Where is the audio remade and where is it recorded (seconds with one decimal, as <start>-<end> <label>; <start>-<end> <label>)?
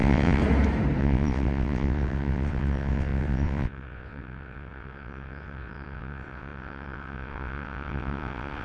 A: 0.0-0.4 remade; 0.4-1.0 recorded; 1.0-8.6 remade